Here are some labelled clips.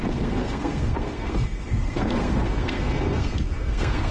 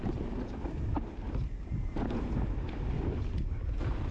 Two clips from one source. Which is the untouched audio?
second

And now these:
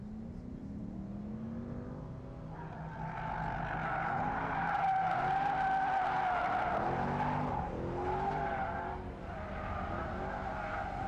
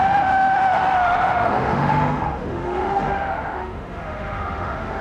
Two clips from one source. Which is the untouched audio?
first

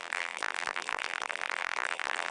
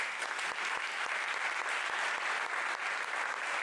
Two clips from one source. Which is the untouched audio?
second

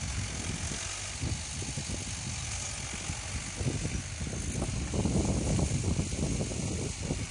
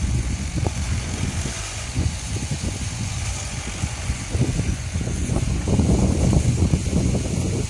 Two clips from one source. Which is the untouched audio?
first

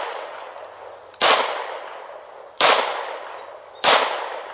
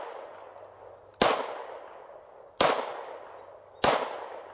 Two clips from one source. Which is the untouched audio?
second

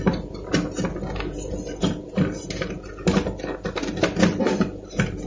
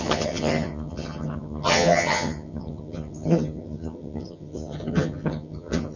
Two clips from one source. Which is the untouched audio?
first